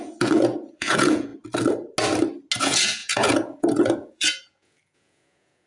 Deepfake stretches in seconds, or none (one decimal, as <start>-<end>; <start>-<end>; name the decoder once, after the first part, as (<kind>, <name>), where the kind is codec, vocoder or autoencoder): 0.0-1.3 (vocoder, Vocos); 2.6-5.7